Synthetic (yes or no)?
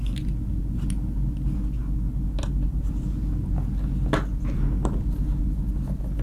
no